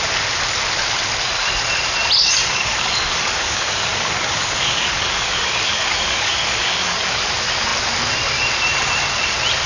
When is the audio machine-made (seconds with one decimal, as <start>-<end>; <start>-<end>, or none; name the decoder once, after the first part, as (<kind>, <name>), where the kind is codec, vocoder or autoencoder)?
2.2-7.2 (codec, DAC)